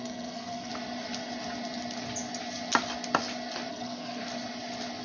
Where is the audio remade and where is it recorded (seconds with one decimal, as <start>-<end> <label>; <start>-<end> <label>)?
0.0-0.7 remade; 0.7-3.7 recorded; 3.7-4.2 remade; 4.2-5.0 recorded